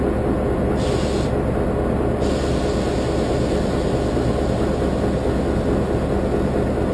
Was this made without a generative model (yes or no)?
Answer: yes